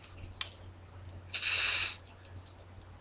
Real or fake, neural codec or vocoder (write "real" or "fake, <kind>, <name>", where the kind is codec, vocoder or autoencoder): real